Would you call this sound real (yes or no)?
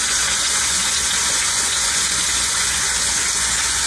no